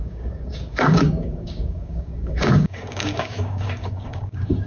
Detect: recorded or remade remade